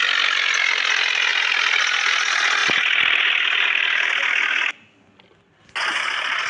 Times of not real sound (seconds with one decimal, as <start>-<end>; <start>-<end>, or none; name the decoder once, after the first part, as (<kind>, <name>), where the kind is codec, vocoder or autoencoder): none